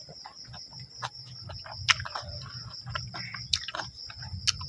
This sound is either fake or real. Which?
real